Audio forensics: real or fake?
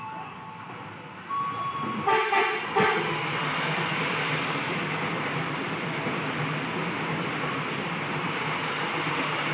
real